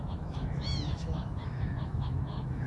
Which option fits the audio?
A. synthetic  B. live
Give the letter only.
A